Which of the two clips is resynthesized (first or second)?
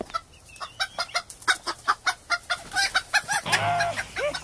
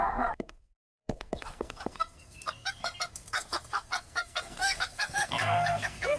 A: second